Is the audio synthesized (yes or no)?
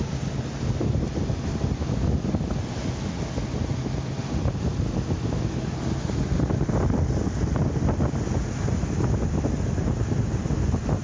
no